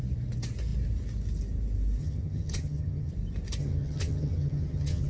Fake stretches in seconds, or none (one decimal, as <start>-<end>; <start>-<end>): 2.0-3.1; 3.6-5.1